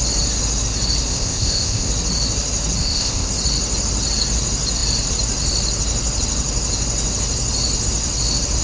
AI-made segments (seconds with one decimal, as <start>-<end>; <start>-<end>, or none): 1.1-1.9; 2.8-3.3